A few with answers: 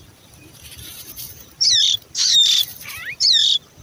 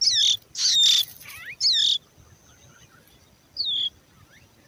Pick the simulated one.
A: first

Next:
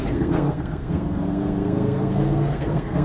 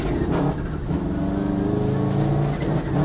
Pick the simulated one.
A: first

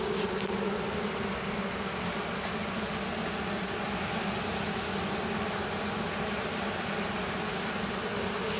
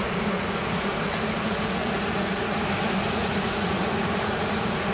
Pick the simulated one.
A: second